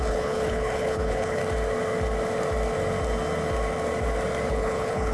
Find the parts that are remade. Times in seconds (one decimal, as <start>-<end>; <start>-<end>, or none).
0.0-1.4; 4.5-5.1